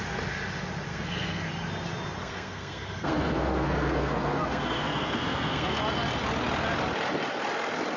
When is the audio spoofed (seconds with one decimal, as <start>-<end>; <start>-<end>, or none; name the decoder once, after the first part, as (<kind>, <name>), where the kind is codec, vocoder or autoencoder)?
0.9-1.5 (codec, SNAC); 2.2-5.8